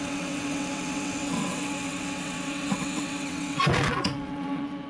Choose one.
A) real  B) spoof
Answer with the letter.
B